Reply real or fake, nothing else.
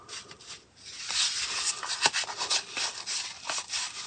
real